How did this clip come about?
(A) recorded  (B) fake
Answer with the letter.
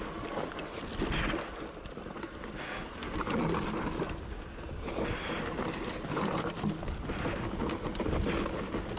A